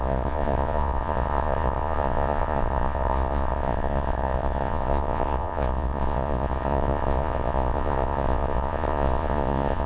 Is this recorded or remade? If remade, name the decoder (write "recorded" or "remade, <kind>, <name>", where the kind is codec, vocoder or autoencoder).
remade, vocoder, Vocos